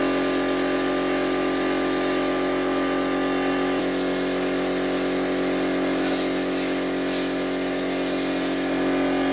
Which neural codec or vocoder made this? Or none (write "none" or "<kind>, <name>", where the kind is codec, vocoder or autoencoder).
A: none